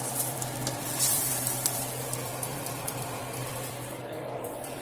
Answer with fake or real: fake